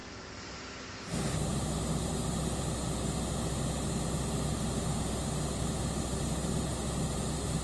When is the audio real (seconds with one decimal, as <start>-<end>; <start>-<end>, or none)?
0.6-7.6